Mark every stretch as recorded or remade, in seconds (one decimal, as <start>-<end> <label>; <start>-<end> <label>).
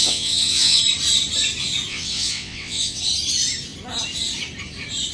0.0-0.8 remade; 0.8-1.9 recorded; 1.9-3.0 remade; 3.0-5.1 recorded